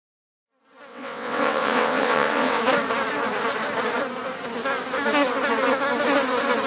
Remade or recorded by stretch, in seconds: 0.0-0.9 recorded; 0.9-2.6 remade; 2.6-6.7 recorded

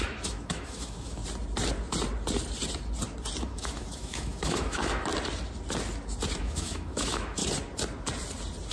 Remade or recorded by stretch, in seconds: 0.0-1.2 remade; 1.2-3.4 recorded; 3.4-5.1 remade; 5.1-6.4 recorded; 6.4-7.4 remade; 7.4-8.7 recorded

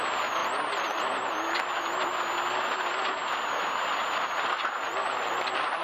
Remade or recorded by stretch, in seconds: 0.0-0.4 recorded; 0.4-1.0 remade; 1.0-4.8 recorded; 4.8-5.8 remade